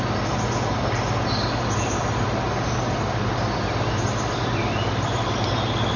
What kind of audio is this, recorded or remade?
recorded